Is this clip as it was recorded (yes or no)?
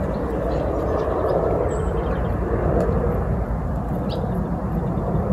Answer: yes